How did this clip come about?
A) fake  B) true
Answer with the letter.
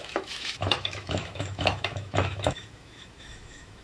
A